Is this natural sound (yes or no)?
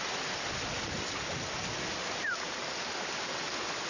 yes